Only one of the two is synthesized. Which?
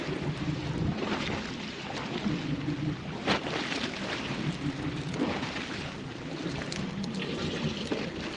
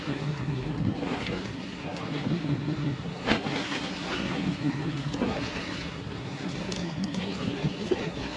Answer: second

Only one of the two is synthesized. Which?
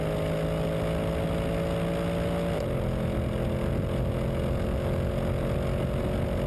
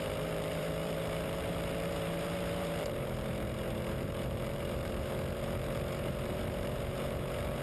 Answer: second